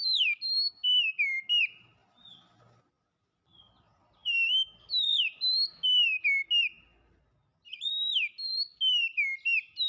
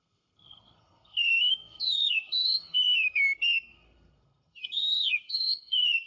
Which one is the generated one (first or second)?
second